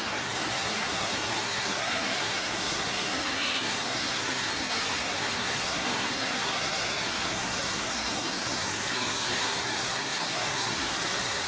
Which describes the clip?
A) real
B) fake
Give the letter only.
B